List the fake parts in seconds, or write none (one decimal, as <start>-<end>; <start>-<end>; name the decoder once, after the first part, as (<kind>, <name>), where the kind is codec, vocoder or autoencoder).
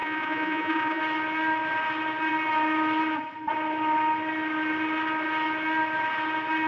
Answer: 0.0-1.0 (vocoder, Vocos)